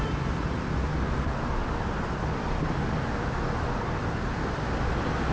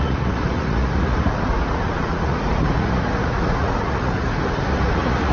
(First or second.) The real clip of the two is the first